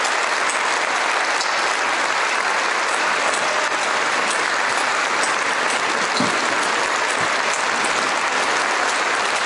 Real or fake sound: real